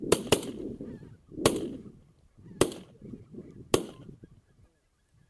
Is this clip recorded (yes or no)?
yes